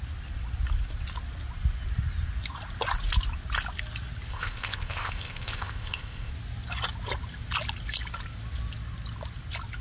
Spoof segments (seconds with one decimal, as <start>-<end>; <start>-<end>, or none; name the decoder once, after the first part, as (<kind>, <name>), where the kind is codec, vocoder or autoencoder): 4.3-6.3 (codec, ZipCodec)